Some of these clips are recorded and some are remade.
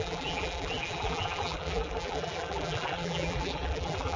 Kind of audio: remade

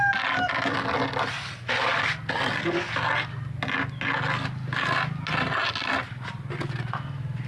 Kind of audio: recorded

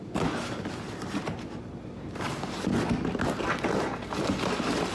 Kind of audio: recorded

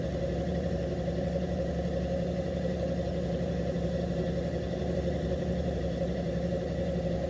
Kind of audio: remade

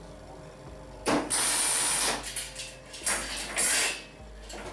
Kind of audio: recorded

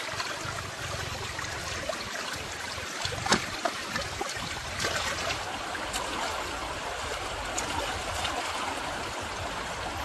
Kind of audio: remade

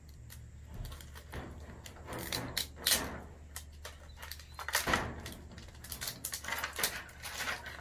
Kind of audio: recorded